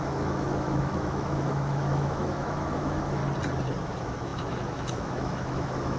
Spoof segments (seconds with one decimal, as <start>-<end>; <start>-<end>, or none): 0.0-3.2; 3.8-6.0